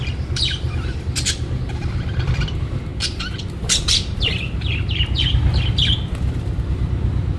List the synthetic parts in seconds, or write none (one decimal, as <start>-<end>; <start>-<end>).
none